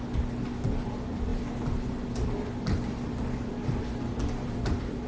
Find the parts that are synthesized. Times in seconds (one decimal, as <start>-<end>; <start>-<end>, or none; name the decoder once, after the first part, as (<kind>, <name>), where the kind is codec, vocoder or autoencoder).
none